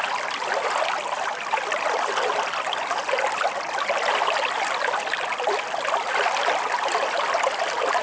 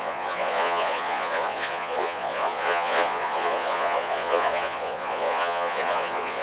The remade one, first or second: second